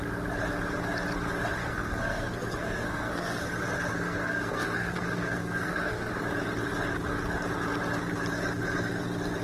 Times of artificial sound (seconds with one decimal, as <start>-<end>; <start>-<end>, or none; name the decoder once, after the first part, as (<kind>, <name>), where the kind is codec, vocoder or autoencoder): 1.6-3.4 (codec, SNAC); 3.9-6.1